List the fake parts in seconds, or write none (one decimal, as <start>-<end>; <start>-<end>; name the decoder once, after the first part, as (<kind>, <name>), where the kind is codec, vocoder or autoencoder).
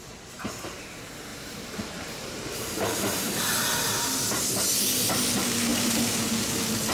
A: 1.3-3.3 (vocoder, BigVGAN v2); 5.7-6.3